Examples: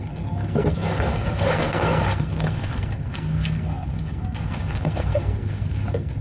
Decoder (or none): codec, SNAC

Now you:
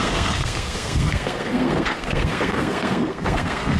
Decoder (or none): codec, SNAC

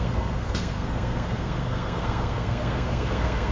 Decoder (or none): codec, SNAC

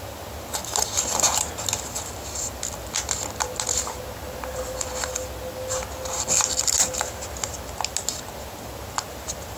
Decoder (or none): none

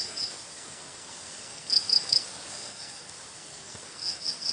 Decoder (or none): codec, SNAC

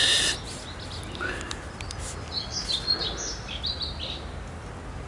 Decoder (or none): none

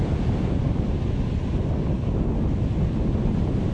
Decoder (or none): none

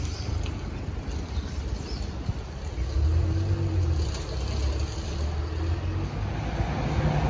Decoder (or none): none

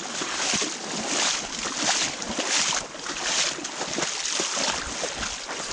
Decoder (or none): none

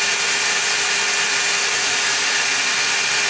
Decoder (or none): none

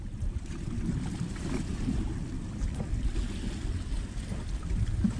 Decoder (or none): none